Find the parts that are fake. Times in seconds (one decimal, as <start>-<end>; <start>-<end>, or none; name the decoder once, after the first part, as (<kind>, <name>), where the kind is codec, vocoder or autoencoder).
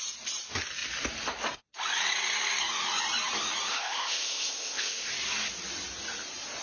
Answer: 3.7-5.1 (codec, ZipCodec)